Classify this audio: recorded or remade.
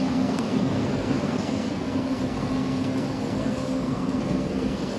remade